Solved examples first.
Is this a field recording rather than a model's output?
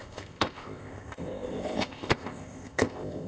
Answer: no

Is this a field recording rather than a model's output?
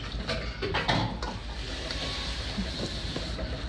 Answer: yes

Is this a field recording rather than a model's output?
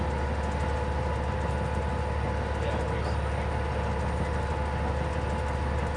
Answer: yes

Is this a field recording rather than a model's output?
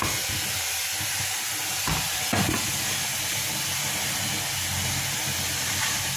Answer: yes